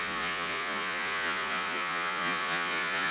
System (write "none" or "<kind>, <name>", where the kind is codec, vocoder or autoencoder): vocoder, Vocos